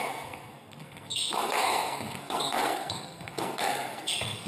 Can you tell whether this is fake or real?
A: fake